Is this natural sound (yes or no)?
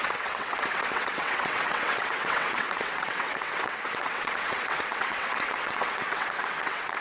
no